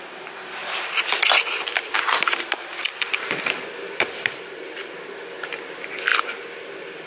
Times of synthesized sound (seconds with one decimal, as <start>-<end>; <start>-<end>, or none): 0.6-4.9; 6.1-7.1